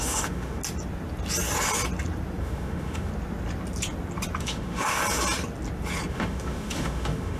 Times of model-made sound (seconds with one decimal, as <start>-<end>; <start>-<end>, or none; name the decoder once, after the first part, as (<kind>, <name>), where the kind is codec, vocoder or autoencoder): 0.0-0.6 (autoencoder, DAC-VAE); 2.4-3.1; 4.4-5.0; 6.1-7.4